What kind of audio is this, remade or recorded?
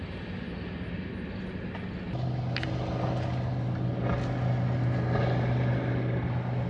recorded